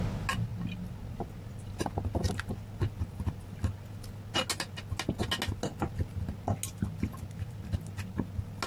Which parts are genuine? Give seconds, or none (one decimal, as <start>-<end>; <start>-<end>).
0.0-8.7